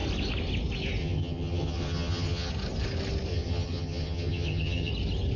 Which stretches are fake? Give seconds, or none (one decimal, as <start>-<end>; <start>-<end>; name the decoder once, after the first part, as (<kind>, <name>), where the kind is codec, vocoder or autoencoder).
1.0-2.5 (vocoder, HiFi-GAN); 3.3-4.9